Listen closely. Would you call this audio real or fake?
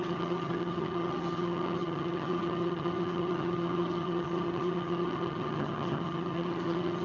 fake